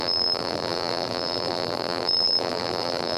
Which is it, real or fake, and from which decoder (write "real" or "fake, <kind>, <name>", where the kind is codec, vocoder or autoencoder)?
fake, vocoder, BigVGAN v2